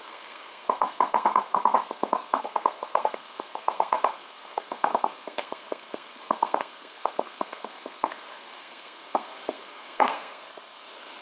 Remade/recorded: remade